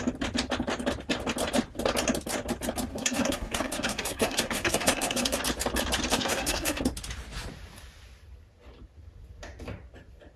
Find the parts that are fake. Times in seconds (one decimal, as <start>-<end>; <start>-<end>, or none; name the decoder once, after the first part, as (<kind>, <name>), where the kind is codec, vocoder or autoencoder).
2.9-5.4 (codec, SNAC); 6.1-6.8

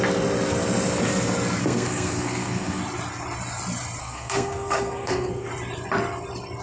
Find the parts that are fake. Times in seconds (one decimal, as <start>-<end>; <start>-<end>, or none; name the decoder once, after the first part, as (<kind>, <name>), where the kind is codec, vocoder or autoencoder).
1.6-2.8 (codec, SNAC); 4.0-5.5

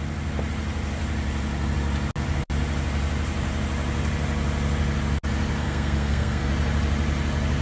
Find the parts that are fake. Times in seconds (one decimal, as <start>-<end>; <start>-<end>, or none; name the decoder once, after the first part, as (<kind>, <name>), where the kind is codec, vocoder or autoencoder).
5.6-6.5 (codec, SNAC)

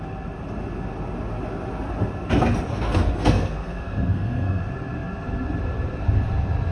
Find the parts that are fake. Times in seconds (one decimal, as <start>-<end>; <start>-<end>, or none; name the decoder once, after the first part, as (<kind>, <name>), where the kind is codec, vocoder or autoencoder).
2.7-4.6 (codec, SNAC)

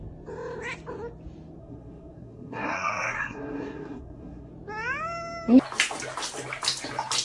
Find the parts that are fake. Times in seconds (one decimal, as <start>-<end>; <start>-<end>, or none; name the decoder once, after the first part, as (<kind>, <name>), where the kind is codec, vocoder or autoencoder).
1.6-4.5 (codec, SNAC)